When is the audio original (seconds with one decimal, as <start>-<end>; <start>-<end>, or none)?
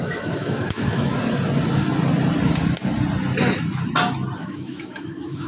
1.1-4.4